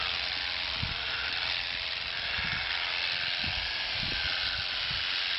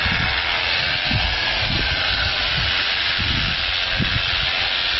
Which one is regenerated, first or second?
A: first